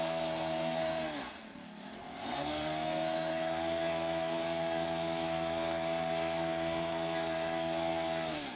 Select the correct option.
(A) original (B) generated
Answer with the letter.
B